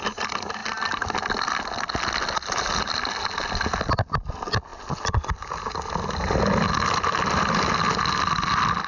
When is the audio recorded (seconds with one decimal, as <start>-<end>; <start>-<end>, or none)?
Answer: 0.0-4.7; 5.3-8.9